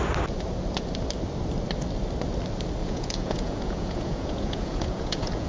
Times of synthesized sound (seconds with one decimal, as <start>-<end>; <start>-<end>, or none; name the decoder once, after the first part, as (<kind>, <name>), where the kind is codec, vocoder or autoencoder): 2.8-5.5 (vocoder, Vocos)